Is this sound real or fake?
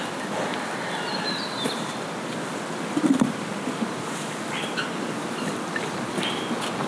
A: fake